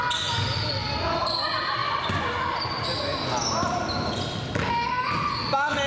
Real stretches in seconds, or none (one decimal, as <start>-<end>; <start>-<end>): 0.0-1.8; 4.1-5.9